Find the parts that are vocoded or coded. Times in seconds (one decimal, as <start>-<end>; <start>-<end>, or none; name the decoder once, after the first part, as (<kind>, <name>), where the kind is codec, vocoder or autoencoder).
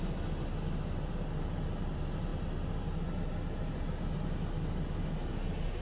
none